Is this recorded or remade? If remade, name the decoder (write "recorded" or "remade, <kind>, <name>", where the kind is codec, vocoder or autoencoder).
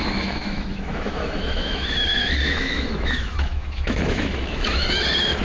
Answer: remade, autoencoder, DAC-VAE